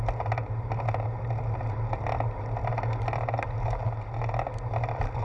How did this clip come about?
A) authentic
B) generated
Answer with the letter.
A